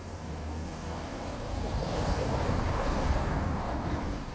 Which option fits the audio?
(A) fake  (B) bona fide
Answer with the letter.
A